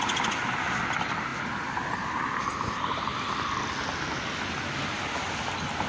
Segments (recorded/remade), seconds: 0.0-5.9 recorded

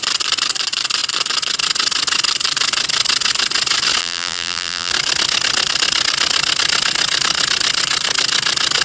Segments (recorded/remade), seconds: 0.0-4.0 recorded; 4.0-4.9 remade; 4.9-8.8 recorded

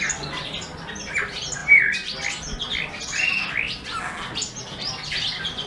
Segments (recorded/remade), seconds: 0.0-1.6 remade; 1.6-4.6 recorded; 4.6-5.7 remade

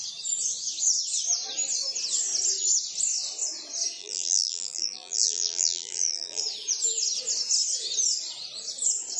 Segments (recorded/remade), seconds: 0.0-4.0 recorded; 4.0-6.4 remade; 6.4-9.2 recorded

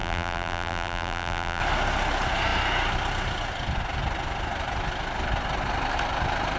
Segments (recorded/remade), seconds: 0.0-1.6 remade; 1.6-6.6 recorded

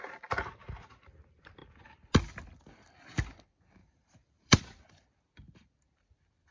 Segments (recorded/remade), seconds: 0.0-3.8 recorded; 3.8-4.6 remade; 4.6-6.5 recorded

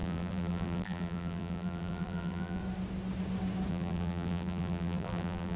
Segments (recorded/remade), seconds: 0.0-2.6 remade; 2.6-3.7 recorded; 3.7-5.6 remade

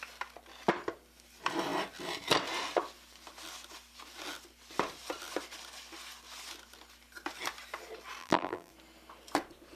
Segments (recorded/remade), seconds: 0.0-8.2 recorded; 8.2-8.7 remade; 8.7-9.8 recorded